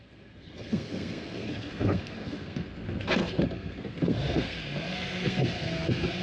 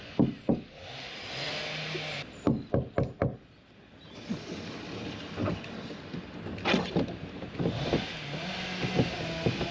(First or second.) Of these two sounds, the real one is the second